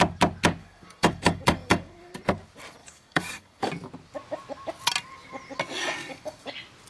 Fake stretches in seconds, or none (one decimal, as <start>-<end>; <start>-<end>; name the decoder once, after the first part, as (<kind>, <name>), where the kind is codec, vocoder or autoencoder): 0.6-2.1 (codec, DAC); 2.8-3.7; 6.0-6.5